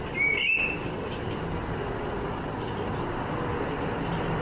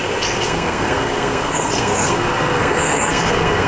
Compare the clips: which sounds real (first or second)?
first